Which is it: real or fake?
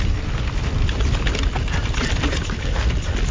real